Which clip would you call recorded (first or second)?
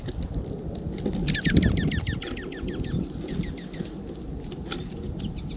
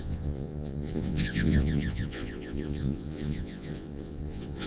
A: first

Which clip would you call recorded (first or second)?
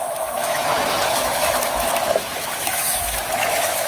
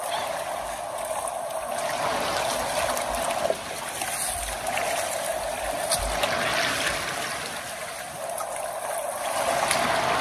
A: second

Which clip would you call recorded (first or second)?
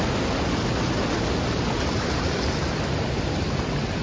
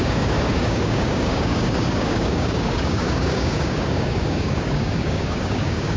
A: first